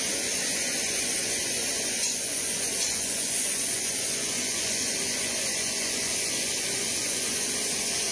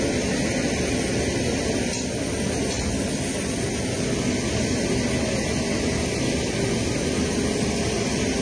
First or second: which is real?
second